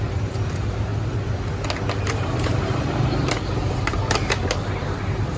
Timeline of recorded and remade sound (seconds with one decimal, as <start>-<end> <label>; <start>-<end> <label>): 0.0-0.9 remade; 0.9-2.1 recorded; 2.1-5.4 remade